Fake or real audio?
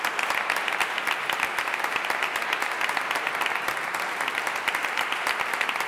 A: real